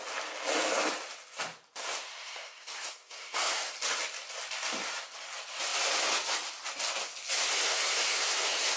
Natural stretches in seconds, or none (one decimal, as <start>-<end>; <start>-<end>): 0.0-2.1; 3.7-7.5